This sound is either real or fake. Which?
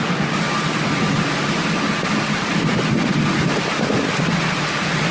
real